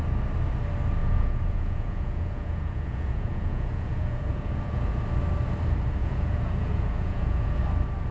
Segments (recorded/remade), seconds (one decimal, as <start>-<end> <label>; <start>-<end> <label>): 0.0-1.0 recorded; 1.0-5.0 remade; 5.0-6.0 recorded; 6.0-7.6 remade; 7.6-8.1 recorded